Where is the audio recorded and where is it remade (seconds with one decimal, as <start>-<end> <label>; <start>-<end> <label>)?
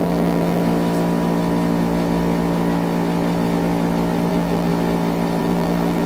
0.0-0.6 remade; 0.6-4.3 recorded; 4.3-4.7 remade; 4.7-5.4 recorded; 5.4-6.1 remade